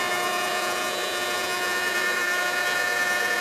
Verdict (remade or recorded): remade